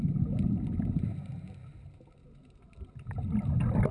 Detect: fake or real real